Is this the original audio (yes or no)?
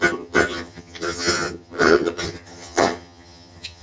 no